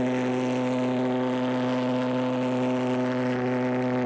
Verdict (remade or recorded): recorded